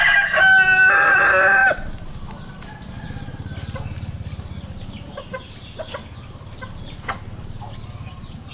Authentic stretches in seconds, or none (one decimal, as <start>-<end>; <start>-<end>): 0.0-1.6; 2.1-8.5

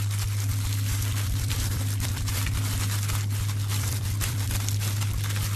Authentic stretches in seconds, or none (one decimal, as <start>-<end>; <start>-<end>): 0.0-0.5; 2.6-3.7; 5.0-5.6

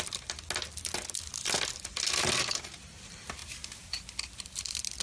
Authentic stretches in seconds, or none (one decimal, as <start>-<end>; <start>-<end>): 0.0-3.4; 4.1-5.0

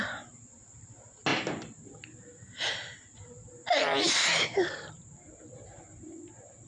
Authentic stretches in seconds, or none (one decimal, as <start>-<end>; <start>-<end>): 0.0-6.7

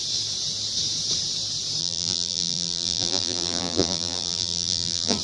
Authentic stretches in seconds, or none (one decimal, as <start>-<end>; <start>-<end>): 0.0-1.8

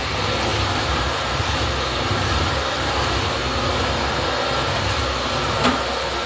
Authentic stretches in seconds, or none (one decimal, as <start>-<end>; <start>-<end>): 0.0-0.5; 2.6-6.3

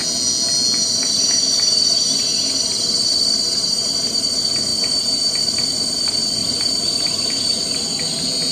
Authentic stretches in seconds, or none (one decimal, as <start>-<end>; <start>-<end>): 0.0-4.7; 5.4-8.5

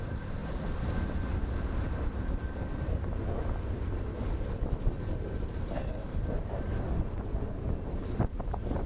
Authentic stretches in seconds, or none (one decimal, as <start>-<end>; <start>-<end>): 0.4-4.2